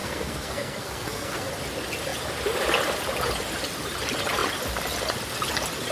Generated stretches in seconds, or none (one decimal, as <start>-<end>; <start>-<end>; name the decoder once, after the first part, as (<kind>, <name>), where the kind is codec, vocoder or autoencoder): 0.0-1.5 (codec, SNAC)